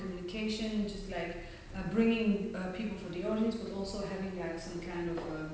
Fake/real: real